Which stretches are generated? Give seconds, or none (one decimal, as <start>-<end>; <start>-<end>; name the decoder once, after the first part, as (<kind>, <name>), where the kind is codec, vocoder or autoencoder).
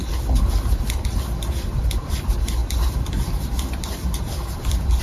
2.6-5.0 (vocoder, BigVGAN v2)